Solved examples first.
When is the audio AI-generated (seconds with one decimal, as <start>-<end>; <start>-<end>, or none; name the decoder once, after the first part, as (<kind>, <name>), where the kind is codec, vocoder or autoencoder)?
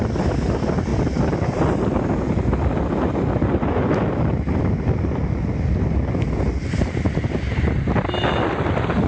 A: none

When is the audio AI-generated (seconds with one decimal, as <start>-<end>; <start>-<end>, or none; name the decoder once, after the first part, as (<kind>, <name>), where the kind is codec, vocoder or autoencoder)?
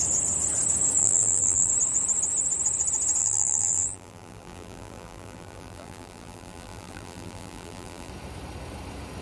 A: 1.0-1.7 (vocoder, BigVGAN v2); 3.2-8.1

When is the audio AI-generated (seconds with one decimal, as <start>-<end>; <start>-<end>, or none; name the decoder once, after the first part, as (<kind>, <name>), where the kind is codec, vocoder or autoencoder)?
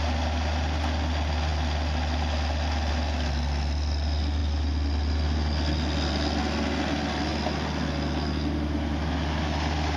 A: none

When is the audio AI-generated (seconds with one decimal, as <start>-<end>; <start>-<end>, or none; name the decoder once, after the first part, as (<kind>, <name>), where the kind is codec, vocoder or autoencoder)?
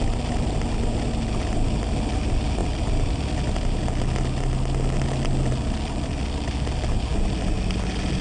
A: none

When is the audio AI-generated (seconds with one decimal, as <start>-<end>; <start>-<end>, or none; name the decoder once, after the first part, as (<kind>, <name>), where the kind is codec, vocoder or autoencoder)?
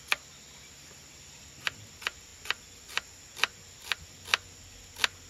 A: 2.3-4.0 (vocoder, BigVGAN v2)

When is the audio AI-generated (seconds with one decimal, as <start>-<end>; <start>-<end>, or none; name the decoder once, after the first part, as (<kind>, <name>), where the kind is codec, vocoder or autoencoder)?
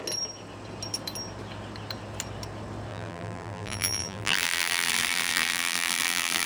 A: 2.9-6.5 (vocoder, BigVGAN v2)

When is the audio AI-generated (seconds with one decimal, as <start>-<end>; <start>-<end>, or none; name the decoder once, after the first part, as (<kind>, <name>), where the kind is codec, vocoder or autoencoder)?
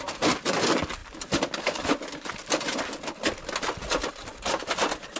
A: none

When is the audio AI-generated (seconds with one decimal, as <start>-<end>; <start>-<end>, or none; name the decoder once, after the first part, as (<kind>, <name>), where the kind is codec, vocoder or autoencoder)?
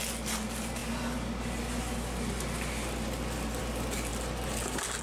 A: none